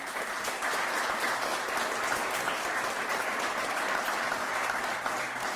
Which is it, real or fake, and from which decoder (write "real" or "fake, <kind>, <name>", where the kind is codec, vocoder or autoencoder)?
real